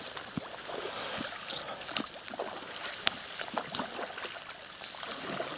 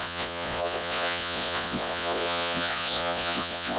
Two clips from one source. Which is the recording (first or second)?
first